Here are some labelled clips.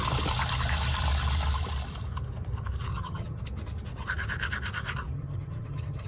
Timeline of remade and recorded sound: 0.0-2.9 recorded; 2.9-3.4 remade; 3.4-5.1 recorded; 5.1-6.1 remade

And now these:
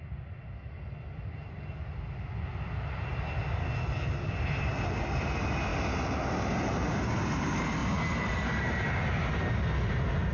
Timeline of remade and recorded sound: 0.0-10.3 recorded